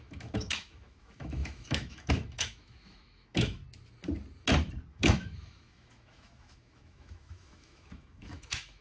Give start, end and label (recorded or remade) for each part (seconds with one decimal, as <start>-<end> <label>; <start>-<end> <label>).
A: 0.0-3.6 remade; 3.6-4.9 recorded; 4.9-8.8 remade